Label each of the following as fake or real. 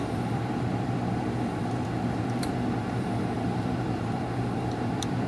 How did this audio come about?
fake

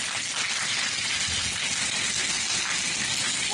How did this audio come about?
real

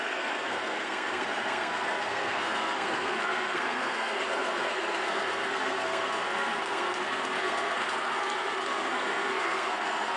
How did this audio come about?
fake